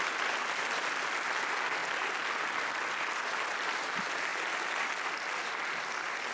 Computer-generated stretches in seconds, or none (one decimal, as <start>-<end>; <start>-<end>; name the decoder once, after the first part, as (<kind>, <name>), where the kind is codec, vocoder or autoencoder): none